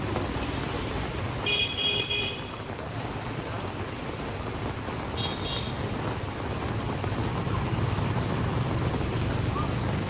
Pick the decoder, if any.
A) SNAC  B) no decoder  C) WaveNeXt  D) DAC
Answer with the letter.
B